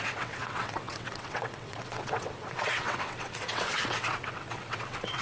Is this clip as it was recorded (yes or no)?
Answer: no